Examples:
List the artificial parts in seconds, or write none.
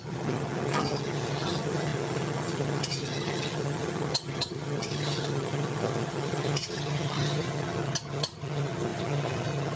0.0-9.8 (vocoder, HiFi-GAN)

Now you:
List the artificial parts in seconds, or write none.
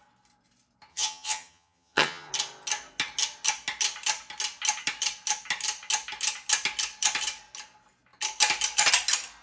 0.9-2.3 (vocoder, HiFi-GAN)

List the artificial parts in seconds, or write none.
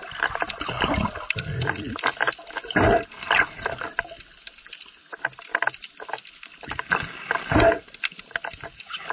none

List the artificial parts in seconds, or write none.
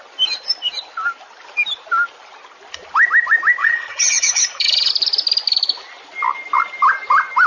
3.6-4.9 (vocoder, HiFi-GAN)